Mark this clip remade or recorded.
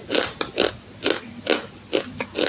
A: recorded